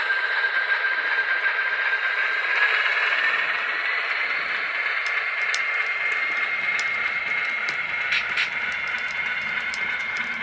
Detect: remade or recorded remade